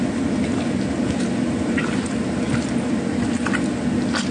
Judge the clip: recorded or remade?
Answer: recorded